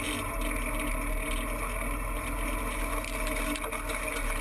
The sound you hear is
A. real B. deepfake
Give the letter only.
A